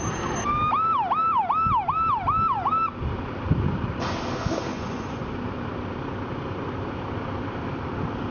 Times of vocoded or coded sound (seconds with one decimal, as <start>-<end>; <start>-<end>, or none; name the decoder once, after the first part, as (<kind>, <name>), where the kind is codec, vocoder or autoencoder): 4.7-5.2 (vocoder, Vocos)